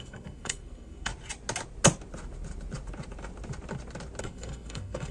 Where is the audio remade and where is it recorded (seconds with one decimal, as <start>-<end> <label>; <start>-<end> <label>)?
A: 0.0-1.1 remade; 1.1-4.2 recorded; 4.2-5.1 remade